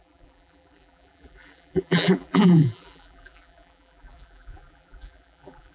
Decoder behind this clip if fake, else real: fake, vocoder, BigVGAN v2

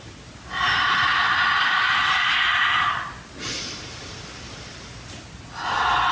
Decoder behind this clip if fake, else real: real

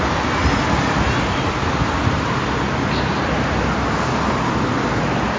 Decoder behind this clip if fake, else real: real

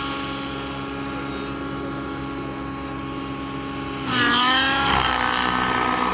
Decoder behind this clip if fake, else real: real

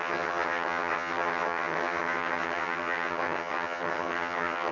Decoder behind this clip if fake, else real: fake, vocoder, HiFi-GAN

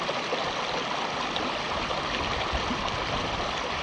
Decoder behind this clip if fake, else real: real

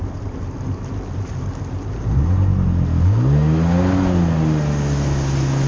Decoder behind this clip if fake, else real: real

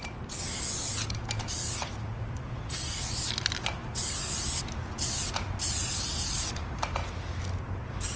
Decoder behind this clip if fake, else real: real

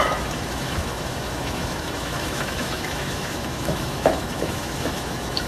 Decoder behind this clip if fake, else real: fake, autoencoder, DAC-VAE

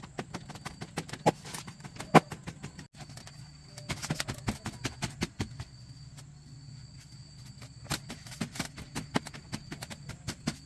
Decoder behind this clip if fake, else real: real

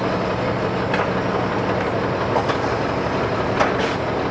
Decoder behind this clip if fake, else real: real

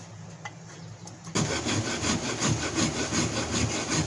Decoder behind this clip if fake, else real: real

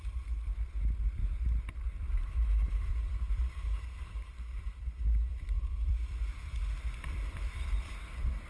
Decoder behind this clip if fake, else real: fake, vocoder, BigVGAN v2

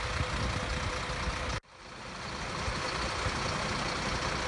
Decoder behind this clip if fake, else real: real